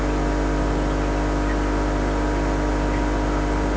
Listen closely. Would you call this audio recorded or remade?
recorded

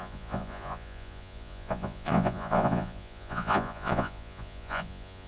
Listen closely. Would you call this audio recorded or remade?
remade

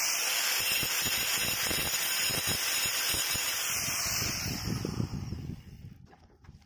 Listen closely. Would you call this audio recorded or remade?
recorded